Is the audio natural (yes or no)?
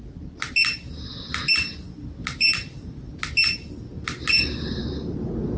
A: yes